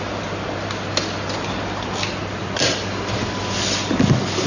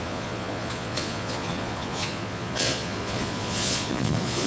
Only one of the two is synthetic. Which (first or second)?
second